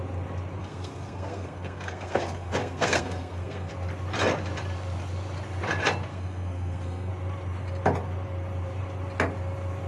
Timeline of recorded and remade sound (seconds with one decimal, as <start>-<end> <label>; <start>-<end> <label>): 0.0-0.6 recorded; 0.6-3.7 remade; 3.7-6.1 recorded; 6.1-7.1 remade; 7.1-9.9 recorded